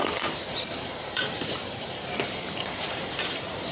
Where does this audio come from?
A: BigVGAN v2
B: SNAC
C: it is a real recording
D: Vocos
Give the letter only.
A